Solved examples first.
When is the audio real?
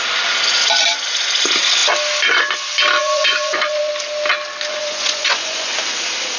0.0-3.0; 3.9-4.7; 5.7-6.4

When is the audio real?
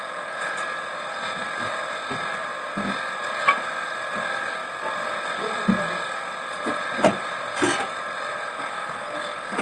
2.5-3.3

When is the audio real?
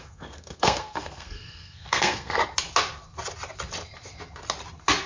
2.4-5.1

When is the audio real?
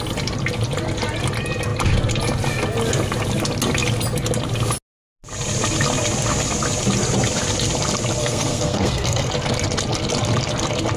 0.0-8.2; 9.3-11.0